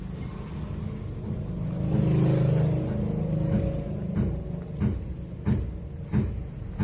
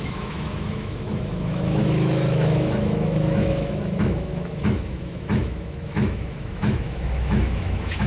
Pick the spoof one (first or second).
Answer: second